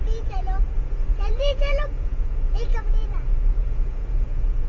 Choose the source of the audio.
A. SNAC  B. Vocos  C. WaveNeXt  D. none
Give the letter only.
B